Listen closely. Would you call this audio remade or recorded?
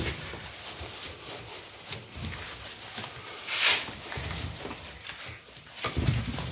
recorded